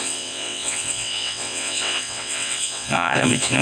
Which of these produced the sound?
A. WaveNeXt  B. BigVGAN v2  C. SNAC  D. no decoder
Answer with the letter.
A